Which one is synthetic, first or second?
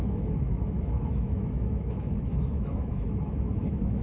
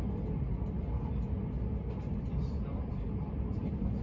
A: first